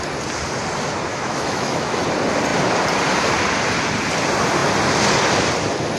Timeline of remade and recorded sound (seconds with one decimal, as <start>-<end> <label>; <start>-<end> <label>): 0.0-1.1 recorded; 1.1-1.9 remade; 1.9-6.0 recorded